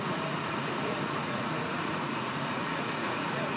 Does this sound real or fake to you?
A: fake